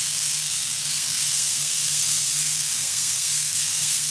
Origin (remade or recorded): remade